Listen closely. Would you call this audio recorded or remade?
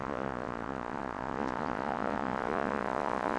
remade